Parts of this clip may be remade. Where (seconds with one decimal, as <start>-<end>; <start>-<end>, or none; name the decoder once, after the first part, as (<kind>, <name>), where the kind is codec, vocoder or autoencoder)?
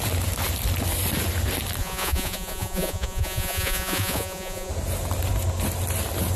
1.8-4.7 (vocoder, Vocos)